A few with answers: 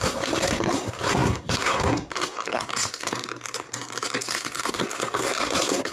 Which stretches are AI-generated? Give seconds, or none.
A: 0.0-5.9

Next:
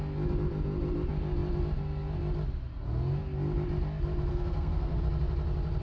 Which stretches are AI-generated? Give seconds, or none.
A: 4.3-5.0

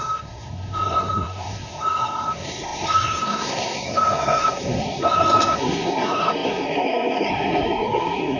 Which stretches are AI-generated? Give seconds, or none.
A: 0.0-8.4

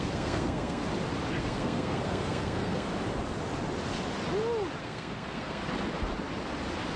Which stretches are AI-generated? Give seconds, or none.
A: 0.0-0.8; 1.4-2.9; 4.8-5.6

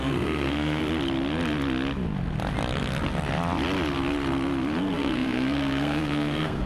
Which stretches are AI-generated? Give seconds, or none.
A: 0.0-0.8; 4.8-6.7

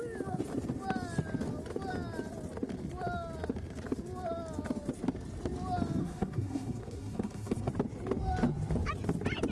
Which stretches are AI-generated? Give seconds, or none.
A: 6.0-7.7

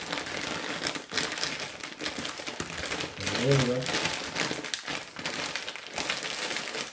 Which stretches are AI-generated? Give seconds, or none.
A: none

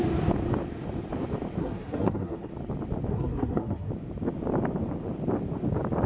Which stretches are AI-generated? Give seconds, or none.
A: 1.6-2.5; 3.1-3.9